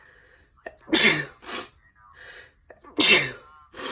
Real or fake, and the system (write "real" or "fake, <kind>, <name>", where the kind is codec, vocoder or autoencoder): real